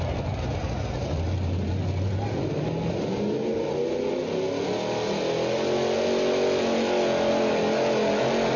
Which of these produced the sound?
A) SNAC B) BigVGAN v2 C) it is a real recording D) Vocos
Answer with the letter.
C